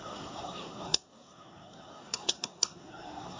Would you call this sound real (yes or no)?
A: no